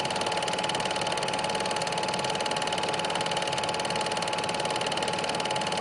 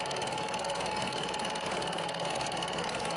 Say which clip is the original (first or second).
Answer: first